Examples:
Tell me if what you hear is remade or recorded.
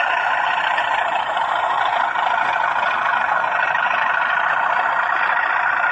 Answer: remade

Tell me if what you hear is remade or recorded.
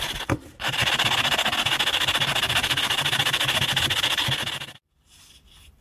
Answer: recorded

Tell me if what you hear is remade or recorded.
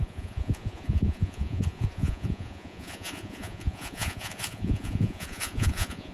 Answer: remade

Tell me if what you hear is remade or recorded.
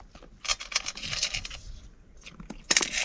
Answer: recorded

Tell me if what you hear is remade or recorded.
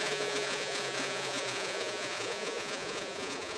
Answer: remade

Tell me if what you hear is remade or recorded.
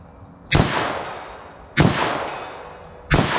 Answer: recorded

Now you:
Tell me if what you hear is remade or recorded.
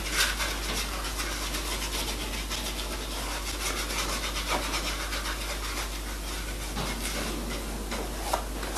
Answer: recorded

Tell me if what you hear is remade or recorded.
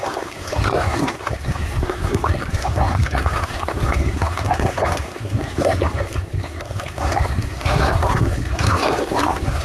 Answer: remade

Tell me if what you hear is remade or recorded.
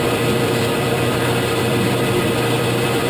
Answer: remade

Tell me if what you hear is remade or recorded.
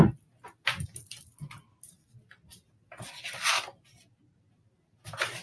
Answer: recorded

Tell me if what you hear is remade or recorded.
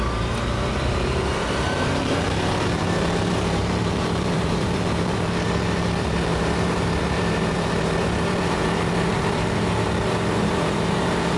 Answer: remade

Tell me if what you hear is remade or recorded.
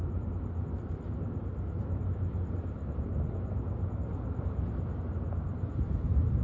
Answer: recorded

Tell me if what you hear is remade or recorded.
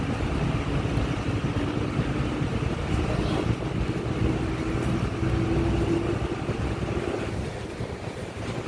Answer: recorded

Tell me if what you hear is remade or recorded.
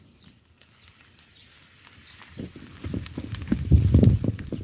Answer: recorded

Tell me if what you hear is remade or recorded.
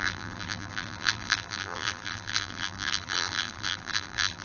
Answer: remade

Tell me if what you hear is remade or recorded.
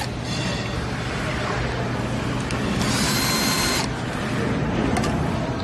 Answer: recorded